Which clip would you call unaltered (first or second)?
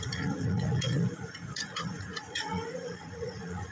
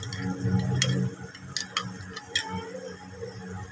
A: second